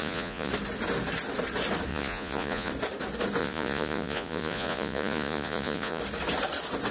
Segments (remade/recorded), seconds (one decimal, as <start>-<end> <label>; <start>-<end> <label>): 0.0-0.5 remade; 0.5-1.9 recorded; 1.9-2.7 remade; 2.7-3.4 recorded; 3.4-6.0 remade; 6.0-6.9 recorded